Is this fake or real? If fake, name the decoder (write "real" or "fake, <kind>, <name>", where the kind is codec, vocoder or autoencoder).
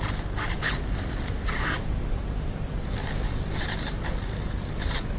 fake, vocoder, BigVGAN v2